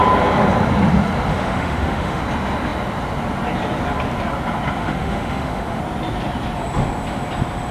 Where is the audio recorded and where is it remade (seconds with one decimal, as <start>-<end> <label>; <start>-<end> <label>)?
0.0-1.3 recorded; 1.3-2.2 remade; 2.2-4.8 recorded; 4.8-5.8 remade; 5.8-7.7 recorded